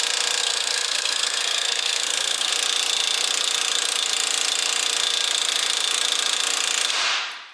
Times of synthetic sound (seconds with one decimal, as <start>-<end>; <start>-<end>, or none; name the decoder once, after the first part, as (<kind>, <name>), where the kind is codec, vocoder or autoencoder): 0.4-2.5 (codec, SNAC)